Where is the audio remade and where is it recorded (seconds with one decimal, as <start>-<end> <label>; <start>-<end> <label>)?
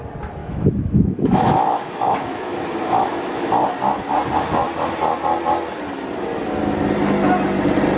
0.0-0.4 recorded; 0.4-3.5 remade; 3.5-8.0 recorded